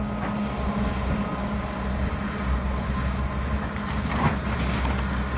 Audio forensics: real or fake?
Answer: real